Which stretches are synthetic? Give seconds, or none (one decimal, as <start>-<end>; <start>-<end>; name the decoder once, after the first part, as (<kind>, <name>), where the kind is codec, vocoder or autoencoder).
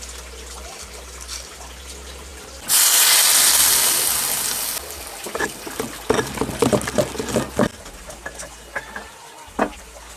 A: none